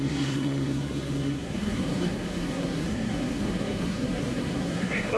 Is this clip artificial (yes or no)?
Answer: yes